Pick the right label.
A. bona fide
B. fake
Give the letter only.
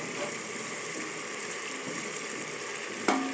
A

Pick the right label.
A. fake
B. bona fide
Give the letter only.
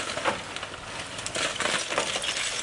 B